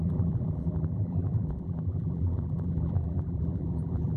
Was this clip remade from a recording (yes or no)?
yes